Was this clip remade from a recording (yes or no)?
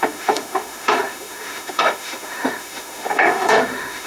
yes